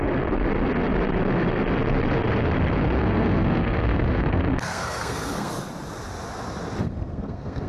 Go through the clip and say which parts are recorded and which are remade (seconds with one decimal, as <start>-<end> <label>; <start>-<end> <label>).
0.0-3.0 recorded; 3.0-5.5 remade; 5.5-6.8 recorded; 6.8-7.7 remade